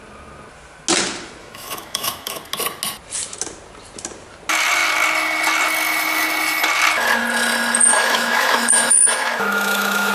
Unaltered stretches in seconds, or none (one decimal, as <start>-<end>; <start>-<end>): 0.0-1.4; 2.4-7.9